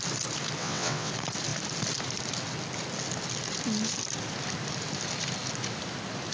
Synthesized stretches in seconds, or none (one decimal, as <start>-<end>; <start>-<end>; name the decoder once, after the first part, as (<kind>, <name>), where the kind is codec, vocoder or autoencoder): 0.6-1.1 (vocoder, WaveNeXt)